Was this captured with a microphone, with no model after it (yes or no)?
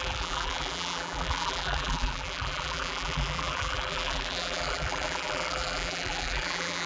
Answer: no